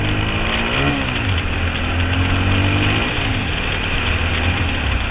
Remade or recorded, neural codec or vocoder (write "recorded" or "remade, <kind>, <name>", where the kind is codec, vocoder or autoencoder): recorded